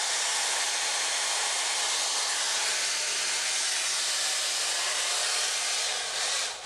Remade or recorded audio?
recorded